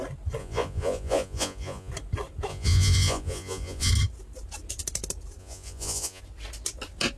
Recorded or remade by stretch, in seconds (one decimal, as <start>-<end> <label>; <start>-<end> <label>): 0.0-0.4 recorded; 0.4-1.9 remade; 1.9-2.5 recorded; 2.5-3.9 remade; 3.9-5.4 recorded; 5.4-6.2 remade; 6.2-7.2 recorded